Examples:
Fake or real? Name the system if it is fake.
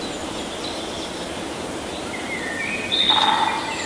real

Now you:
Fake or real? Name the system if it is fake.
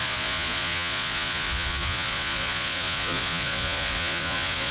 fake, vocoder, Vocos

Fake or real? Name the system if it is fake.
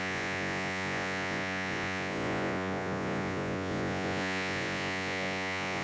fake, vocoder, Vocos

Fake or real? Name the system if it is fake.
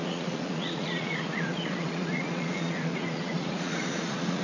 fake, vocoder, Vocos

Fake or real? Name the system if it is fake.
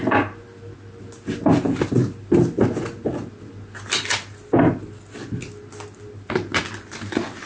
real